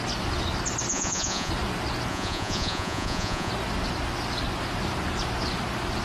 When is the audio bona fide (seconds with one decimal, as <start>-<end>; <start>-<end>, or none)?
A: 0.0-0.9; 1.5-2.1; 3.5-6.0